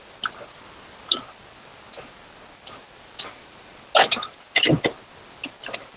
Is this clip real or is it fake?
real